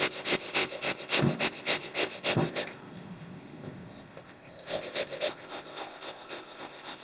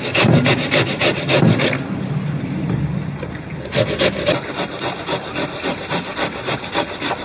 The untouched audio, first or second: second